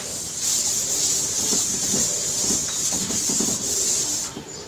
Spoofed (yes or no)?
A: no